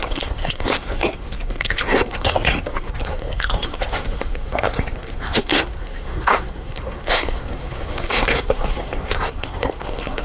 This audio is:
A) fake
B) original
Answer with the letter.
A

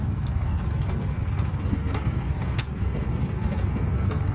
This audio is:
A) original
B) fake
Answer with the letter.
B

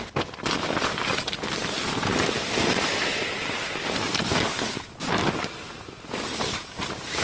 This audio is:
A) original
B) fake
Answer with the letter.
A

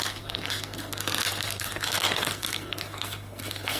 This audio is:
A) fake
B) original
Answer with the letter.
A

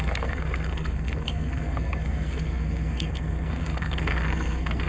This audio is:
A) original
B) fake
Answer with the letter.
B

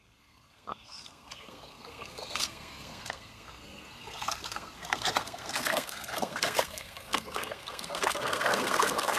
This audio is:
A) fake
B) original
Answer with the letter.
A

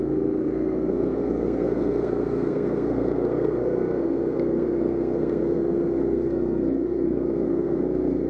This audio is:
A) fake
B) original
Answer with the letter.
A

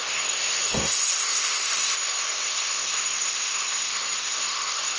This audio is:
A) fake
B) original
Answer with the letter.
A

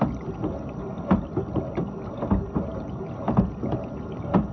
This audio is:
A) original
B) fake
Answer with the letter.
A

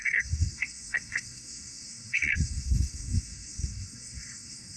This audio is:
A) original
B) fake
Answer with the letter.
B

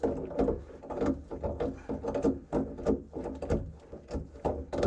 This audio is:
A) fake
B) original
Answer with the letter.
B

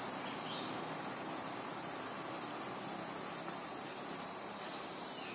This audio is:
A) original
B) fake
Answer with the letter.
A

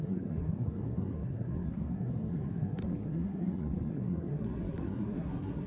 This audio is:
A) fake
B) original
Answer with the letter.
A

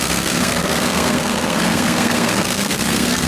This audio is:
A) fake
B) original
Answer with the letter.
A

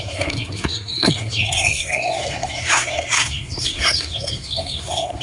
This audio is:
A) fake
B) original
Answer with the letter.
A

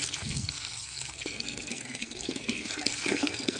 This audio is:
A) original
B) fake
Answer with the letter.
B